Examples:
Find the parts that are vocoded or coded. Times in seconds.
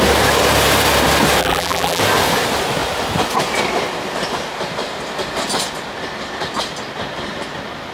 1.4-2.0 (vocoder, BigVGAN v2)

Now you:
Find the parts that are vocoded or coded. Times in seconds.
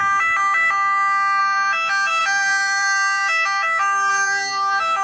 1.4-5.0 (vocoder, BigVGAN v2)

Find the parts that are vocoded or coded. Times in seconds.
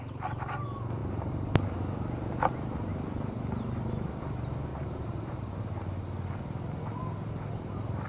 1.0-4.2 (vocoder, BigVGAN v2); 4.7-5.6; 7.0-8.1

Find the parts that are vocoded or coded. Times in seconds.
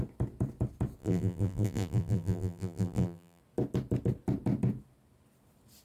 1.0-3.4 (vocoder, BigVGAN v2)